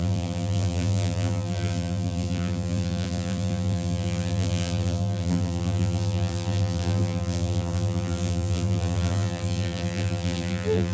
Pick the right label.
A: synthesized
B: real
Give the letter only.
A